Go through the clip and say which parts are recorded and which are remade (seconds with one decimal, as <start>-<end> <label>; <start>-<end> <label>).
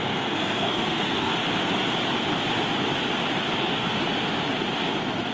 0.0-1.3 remade; 1.3-3.6 recorded; 3.6-4.0 remade; 4.0-5.3 recorded